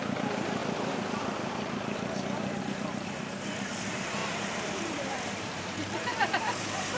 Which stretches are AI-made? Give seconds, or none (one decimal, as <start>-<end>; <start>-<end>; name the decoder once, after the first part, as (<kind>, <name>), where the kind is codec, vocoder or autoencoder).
0.0-0.6 (vocoder, BigVGAN v2); 2.6-4.2; 4.8-7.0